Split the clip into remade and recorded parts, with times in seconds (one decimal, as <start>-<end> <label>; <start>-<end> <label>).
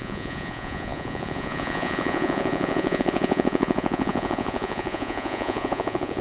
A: 0.0-6.2 remade